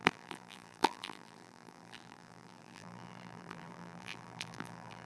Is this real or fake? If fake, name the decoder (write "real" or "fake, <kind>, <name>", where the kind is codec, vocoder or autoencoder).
fake, vocoder, BigVGAN v2